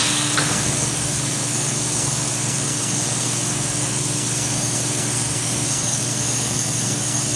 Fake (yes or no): yes